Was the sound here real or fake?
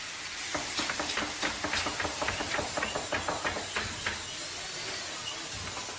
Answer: real